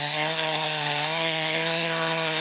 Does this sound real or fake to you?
fake